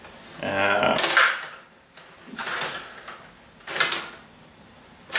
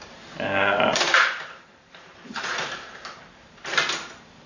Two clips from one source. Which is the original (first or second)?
first